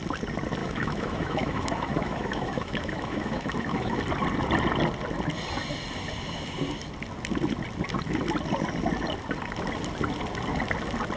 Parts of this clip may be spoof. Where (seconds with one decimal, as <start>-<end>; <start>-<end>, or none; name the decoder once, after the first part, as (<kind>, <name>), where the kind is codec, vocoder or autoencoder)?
0.6-4.0 (autoencoder, DAC-VAE)